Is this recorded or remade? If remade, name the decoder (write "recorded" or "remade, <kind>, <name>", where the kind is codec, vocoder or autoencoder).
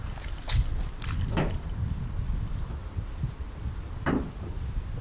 recorded